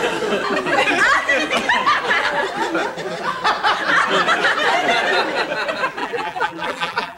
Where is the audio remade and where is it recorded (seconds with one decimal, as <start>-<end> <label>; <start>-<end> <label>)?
0.0-6.0 recorded; 6.0-7.2 remade